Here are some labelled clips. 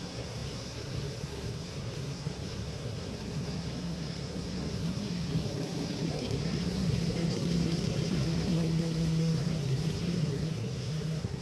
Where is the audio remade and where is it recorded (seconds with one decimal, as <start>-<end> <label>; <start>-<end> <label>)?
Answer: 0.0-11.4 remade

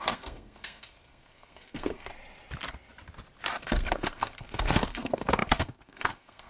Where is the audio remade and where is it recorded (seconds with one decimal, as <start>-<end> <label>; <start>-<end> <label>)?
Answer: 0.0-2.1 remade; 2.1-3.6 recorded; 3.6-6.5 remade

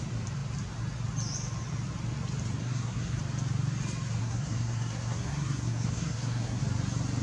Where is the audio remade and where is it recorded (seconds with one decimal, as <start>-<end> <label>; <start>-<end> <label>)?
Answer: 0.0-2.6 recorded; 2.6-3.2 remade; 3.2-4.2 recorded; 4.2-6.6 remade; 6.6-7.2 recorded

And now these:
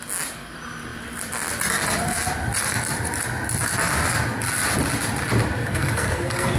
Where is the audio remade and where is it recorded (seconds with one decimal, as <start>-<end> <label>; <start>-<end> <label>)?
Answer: 0.0-5.6 recorded; 5.6-6.6 remade